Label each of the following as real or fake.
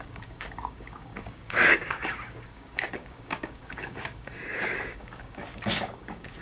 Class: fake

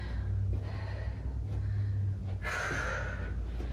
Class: real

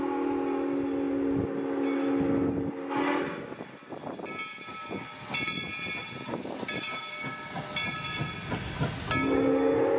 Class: real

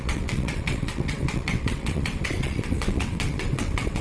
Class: fake